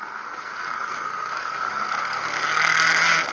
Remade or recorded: remade